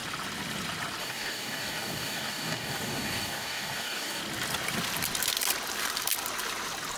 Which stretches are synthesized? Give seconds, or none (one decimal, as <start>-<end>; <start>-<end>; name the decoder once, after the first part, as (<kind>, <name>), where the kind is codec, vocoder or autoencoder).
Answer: 1.0-4.2 (codec, DAC)